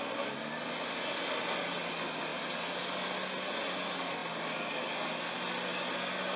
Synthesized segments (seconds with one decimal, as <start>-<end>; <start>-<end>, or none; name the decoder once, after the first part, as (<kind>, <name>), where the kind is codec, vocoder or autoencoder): none